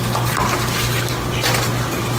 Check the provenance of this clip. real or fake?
real